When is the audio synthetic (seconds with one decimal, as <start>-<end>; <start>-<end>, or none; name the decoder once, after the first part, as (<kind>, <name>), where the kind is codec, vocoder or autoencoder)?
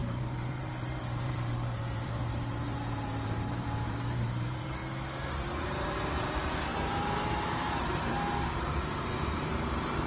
0.0-4.8 (vocoder, BigVGAN v2); 5.6-10.1